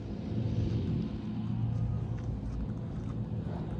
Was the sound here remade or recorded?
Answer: recorded